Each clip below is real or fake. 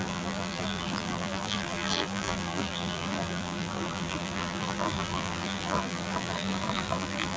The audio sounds fake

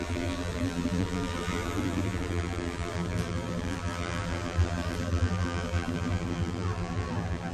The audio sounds fake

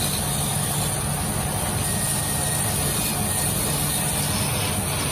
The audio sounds real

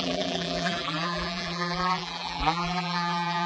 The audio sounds fake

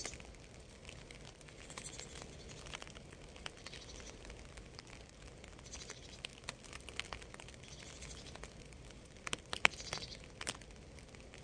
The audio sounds real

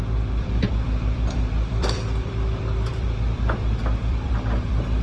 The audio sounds fake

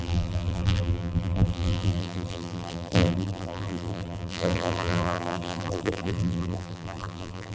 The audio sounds fake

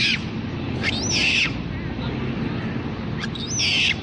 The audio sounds real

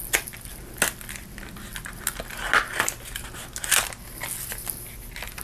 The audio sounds real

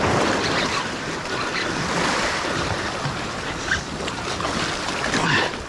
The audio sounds fake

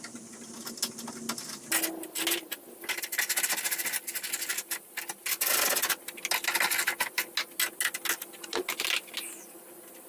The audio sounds real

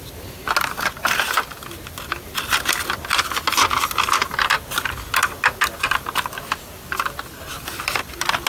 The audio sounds real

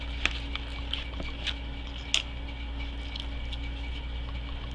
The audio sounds real